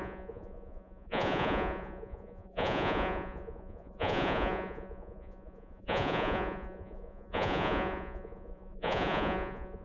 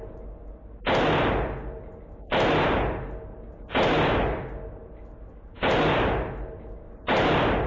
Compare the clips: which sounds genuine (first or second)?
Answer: second